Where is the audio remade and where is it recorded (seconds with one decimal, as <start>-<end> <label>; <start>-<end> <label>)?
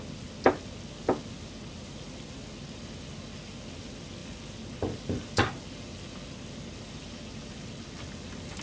0.0-8.6 recorded